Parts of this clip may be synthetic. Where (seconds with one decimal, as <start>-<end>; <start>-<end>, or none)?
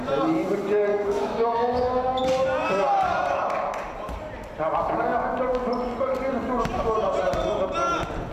0.9-2.2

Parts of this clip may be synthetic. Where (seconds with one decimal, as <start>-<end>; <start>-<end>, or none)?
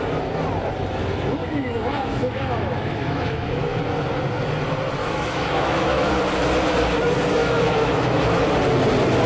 1.4-3.8; 5.0-6.1; 7.4-8.2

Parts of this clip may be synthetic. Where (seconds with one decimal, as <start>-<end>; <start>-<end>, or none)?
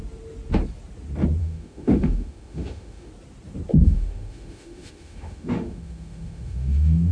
1.4-3.1; 3.7-7.1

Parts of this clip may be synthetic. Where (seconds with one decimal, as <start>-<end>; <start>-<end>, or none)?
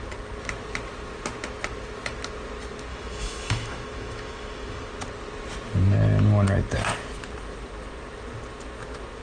2.9-4.9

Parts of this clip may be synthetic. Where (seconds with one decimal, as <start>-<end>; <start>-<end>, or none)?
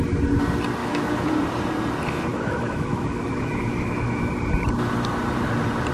0.8-1.3; 2.3-4.3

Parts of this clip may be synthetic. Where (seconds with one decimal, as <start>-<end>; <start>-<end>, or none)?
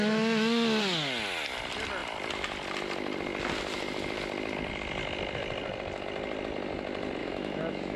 7.2-8.0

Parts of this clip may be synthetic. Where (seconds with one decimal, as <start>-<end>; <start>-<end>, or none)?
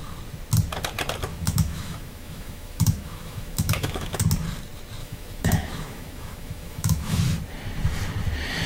1.3-4.2; 5.0-7.2